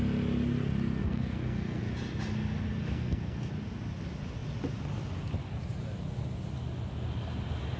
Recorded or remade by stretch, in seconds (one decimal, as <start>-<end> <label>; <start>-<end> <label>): 0.0-1.0 recorded; 1.0-1.8 remade; 1.8-2.8 recorded; 2.8-3.5 remade; 3.5-7.8 recorded